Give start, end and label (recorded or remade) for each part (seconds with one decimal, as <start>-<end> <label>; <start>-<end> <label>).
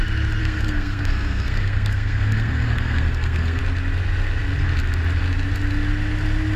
0.0-0.4 recorded; 0.4-3.6 remade; 3.6-6.6 recorded